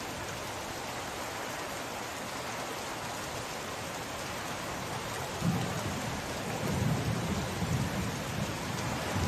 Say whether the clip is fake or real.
real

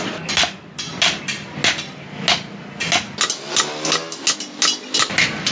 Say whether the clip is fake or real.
real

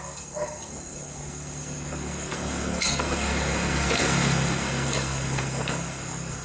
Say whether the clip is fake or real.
fake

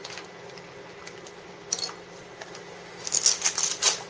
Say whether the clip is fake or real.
real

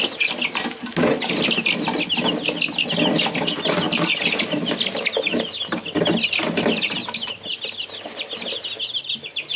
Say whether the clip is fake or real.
real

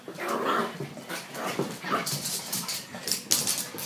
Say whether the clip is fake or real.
real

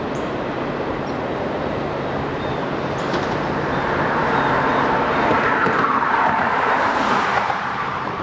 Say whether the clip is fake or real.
fake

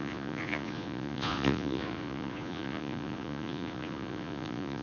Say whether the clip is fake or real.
fake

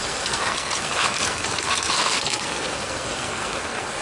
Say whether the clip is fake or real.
fake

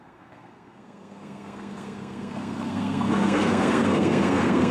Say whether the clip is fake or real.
fake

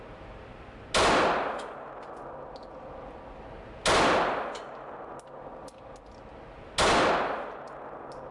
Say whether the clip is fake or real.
real